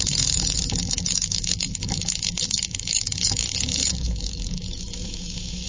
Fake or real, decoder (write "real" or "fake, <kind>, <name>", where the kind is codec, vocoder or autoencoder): fake, autoencoder, DAC-VAE